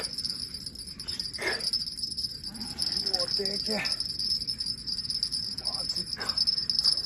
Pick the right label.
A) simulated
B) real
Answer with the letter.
B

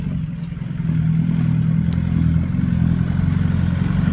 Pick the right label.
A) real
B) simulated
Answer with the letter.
A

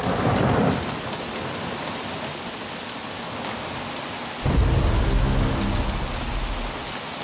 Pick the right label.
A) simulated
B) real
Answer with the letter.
B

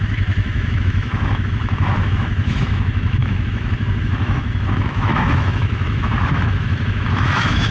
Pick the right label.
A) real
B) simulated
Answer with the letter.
B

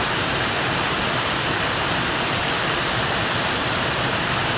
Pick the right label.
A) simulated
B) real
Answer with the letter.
B